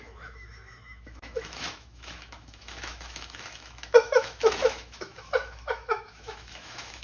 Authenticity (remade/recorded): remade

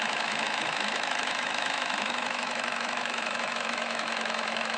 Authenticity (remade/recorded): remade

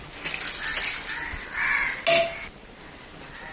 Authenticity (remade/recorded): recorded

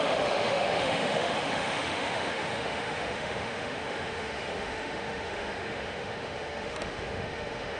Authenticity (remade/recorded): remade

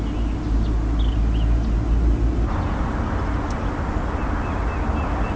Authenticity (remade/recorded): recorded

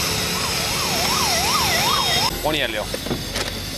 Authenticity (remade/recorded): recorded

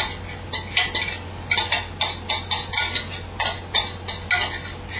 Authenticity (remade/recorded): recorded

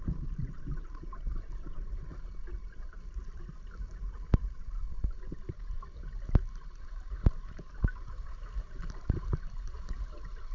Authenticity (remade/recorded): recorded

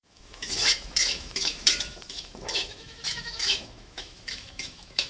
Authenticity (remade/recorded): remade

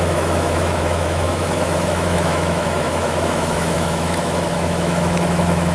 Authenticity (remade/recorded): remade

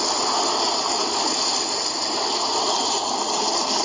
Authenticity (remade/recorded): recorded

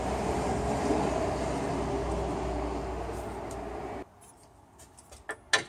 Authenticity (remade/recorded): recorded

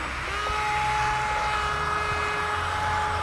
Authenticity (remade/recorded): recorded